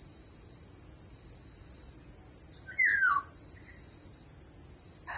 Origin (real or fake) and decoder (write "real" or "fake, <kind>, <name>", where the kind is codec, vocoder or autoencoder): real